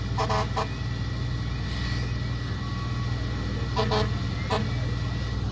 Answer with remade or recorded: recorded